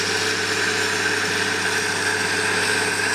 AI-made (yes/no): no